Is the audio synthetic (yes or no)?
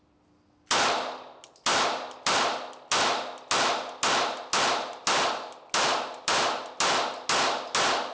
no